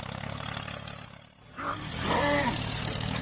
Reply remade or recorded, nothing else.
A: recorded